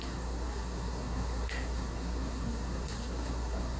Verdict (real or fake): fake